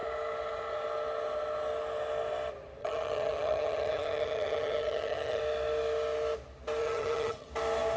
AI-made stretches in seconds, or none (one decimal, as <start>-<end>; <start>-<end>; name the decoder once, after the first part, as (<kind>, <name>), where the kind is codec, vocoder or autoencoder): 2.8-5.4 (vocoder, HiFi-GAN); 6.8-7.5